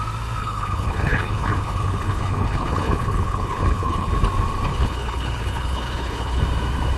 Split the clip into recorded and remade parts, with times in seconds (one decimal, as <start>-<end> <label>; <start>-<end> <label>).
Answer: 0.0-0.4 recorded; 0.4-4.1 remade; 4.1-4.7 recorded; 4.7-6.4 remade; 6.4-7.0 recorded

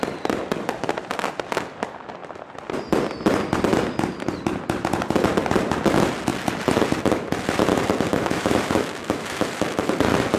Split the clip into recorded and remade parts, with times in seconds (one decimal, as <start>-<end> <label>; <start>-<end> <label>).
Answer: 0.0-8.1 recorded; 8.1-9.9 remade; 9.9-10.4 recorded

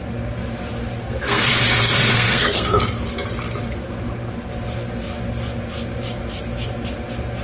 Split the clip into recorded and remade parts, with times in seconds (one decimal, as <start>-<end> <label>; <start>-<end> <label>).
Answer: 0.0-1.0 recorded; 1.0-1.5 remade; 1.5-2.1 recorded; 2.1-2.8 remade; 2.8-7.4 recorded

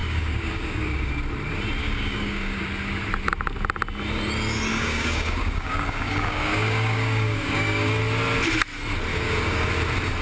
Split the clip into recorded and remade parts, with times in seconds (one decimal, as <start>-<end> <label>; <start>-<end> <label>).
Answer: 0.0-1.1 remade; 1.1-1.8 recorded; 1.8-2.6 remade; 2.6-4.7 recorded; 4.7-8.0 remade; 8.0-9.1 recorded; 9.1-9.7 remade; 9.7-10.2 recorded

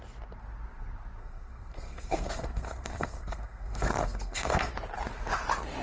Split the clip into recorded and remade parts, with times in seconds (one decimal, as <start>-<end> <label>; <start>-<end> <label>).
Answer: 0.0-1.2 recorded; 1.2-4.7 remade; 4.7-5.8 recorded

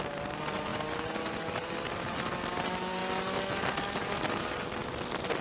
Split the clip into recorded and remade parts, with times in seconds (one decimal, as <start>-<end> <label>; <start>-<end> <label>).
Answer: 0.0-5.4 recorded

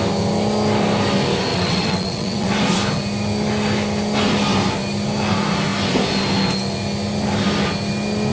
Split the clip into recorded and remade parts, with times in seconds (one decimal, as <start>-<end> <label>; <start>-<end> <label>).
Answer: 0.0-1.5 recorded; 1.5-2.5 remade; 2.5-8.3 recorded